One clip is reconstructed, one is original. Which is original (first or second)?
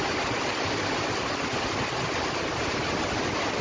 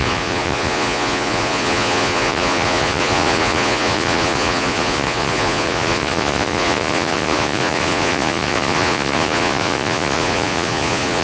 first